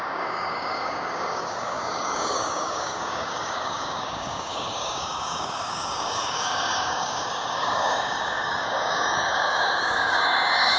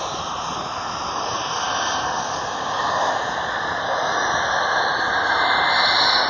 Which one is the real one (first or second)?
second